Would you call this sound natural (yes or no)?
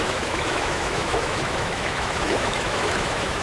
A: no